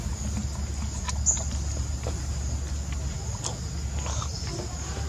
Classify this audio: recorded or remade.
recorded